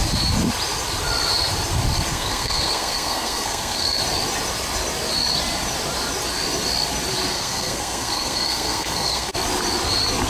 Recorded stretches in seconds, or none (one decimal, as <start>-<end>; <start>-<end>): 0.0-2.1; 4.0-7.3; 9.3-10.3